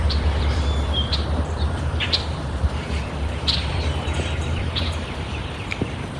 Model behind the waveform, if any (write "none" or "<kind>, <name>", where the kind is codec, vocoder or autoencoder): vocoder, BigVGAN v2